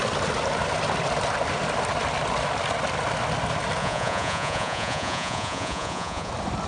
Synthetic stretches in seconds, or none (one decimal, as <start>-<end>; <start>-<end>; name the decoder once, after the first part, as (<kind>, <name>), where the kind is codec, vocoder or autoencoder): 3.8-6.3 (vocoder, Vocos)